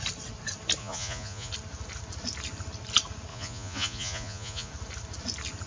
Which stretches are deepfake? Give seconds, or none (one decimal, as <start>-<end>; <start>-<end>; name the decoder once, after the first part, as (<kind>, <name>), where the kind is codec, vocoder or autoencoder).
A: 0.8-1.5 (vocoder, Vocos); 3.3-4.7